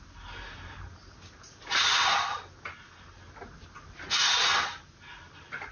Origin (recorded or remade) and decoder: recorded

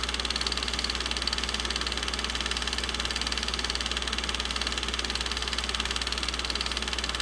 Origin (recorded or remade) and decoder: recorded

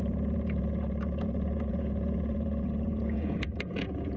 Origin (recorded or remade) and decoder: remade, vocoder, Vocos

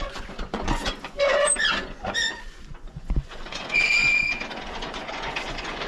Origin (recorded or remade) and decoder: remade, vocoder, Vocos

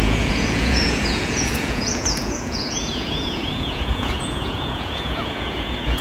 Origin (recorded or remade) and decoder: remade, vocoder, Vocos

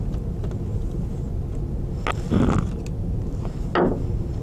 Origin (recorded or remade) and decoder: recorded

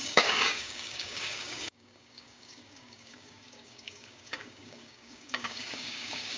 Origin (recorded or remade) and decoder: remade, codec, DAC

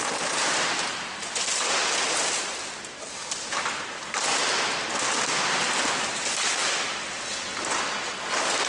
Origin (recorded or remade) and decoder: recorded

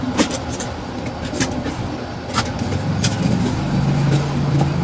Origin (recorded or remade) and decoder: recorded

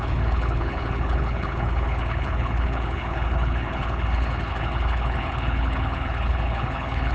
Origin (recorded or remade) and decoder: remade, codec, HILCodec